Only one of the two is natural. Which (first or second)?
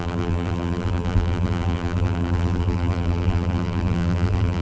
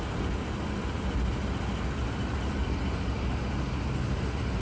second